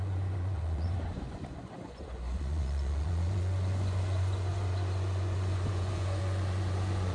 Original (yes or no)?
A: no